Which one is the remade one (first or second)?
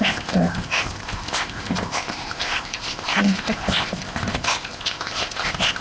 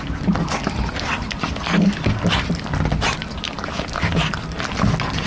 first